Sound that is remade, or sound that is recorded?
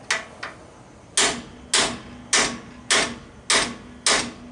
recorded